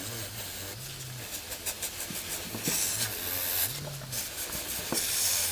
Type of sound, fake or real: real